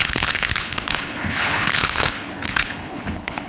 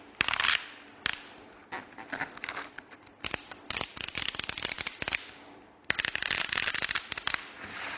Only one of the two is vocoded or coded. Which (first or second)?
first